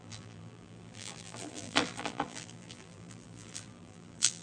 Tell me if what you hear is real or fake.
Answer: fake